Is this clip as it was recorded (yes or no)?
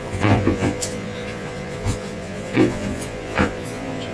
no